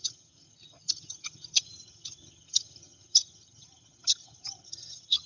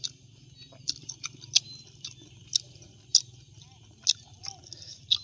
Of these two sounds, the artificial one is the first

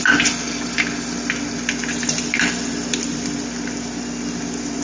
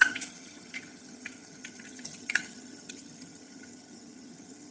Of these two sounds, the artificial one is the second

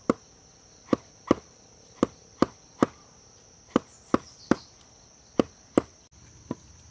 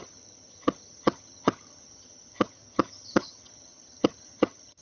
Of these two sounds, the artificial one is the second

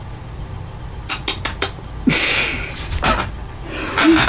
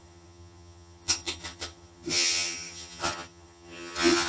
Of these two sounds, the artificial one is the second